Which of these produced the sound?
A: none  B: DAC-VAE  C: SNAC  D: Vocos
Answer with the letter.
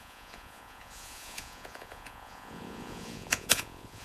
D